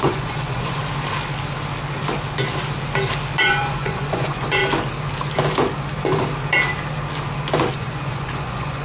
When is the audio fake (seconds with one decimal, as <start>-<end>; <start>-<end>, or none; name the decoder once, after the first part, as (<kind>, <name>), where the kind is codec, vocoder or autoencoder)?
0.0-0.8 (vocoder, Vocos); 3.4-4.6; 7.7-8.8